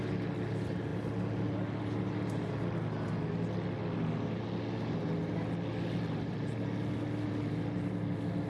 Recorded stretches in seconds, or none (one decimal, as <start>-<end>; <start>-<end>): 0.0-8.5